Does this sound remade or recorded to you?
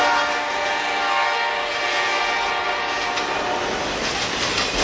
recorded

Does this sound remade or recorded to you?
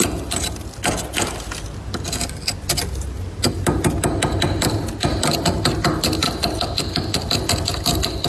recorded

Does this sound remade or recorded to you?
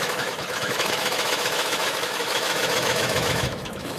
remade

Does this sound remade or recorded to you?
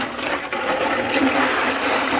recorded